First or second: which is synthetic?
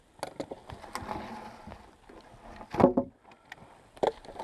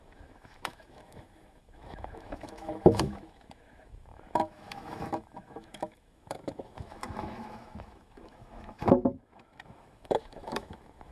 second